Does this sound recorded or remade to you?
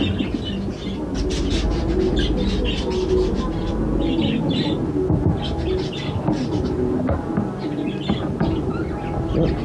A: recorded